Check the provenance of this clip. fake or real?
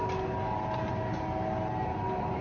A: real